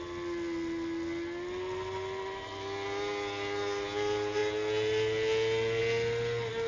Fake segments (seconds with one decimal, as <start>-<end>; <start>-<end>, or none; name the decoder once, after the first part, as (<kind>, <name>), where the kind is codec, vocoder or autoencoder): none